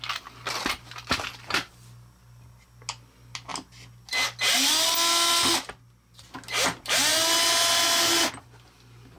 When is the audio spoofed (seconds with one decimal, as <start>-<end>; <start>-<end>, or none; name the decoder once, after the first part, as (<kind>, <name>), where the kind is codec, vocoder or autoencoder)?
none